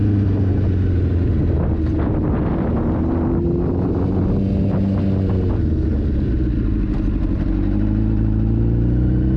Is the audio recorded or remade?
recorded